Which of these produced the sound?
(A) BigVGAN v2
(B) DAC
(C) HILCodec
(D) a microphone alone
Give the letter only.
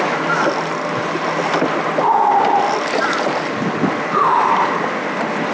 D